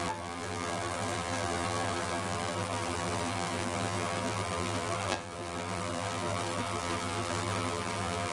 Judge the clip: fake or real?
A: fake